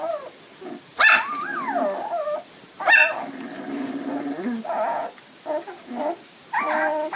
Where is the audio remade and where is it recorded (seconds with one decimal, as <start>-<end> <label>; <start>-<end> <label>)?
0.0-7.2 recorded